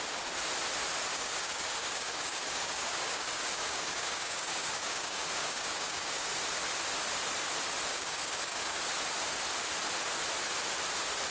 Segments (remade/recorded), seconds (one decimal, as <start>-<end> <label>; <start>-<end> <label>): 0.0-1.1 recorded; 1.1-6.3 remade; 6.3-7.9 recorded; 7.9-8.8 remade; 8.8-11.3 recorded